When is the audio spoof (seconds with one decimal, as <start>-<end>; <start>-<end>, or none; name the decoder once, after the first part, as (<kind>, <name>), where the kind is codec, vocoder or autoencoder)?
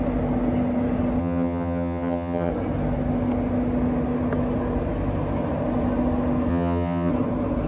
1.2-2.5 (vocoder, HiFi-GAN); 6.5-7.1